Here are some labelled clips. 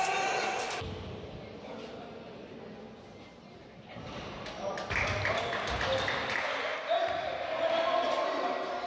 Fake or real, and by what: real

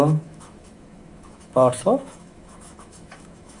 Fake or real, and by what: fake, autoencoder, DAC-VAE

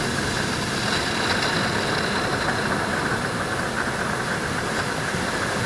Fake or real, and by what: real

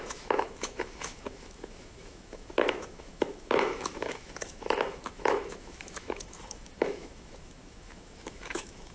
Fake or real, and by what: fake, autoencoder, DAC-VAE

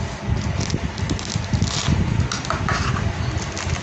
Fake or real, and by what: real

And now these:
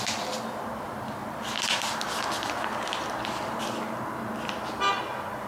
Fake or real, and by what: real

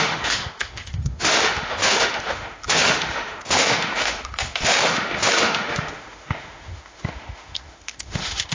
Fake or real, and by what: fake, autoencoder, DAC-VAE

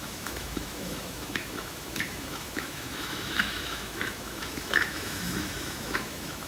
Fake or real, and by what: fake, autoencoder, DAC-VAE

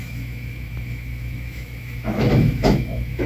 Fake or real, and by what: fake, autoencoder, DAC-VAE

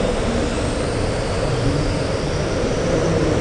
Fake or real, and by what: real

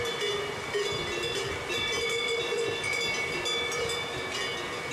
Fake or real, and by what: real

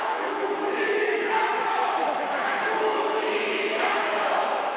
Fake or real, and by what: fake, autoencoder, DAC-VAE